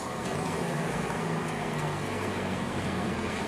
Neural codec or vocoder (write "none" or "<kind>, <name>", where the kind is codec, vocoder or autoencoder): codec, SNAC